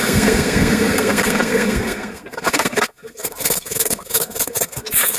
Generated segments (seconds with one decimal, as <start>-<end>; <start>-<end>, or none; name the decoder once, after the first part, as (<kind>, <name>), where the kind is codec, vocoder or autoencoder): 0.0-5.2 (codec, SNAC)

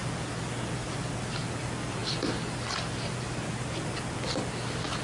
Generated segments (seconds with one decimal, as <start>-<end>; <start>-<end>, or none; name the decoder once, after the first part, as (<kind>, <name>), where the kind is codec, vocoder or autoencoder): none

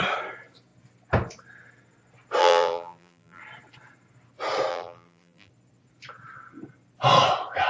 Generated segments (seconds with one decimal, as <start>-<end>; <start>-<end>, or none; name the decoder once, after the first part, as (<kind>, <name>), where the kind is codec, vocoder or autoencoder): 2.4-3.4 (vocoder, BigVGAN v2); 4.7-5.5

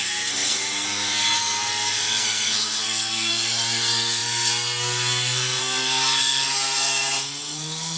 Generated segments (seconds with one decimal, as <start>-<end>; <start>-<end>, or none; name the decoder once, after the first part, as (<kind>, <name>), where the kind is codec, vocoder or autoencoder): 0.0-8.0 (codec, SNAC)

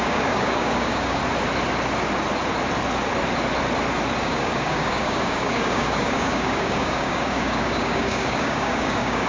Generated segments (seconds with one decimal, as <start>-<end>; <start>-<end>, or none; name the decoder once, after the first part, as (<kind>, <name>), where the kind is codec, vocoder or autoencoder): 0.0-1.2 (codec, DAC); 4.2-9.3

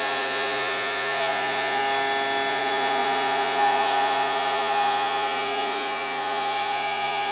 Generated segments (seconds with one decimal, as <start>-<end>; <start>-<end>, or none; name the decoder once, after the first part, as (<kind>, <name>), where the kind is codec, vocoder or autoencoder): 0.0-1.8 (vocoder, Vocos); 2.5-7.3

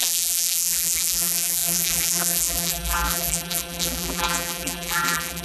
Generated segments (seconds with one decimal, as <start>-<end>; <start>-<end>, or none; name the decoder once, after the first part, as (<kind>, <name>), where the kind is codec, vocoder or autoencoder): 0.0-5.4 (vocoder, BigVGAN v2)

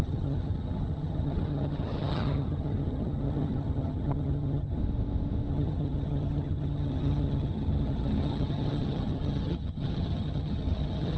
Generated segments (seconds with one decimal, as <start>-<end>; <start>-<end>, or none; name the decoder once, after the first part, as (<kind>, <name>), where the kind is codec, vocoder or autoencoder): 0.0-4.8 (vocoder, HiFi-GAN); 5.5-11.2